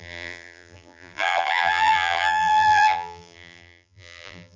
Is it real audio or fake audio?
fake